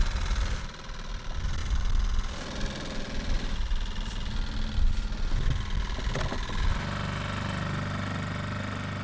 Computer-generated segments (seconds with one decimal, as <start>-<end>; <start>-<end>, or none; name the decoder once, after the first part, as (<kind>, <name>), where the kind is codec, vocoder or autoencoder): none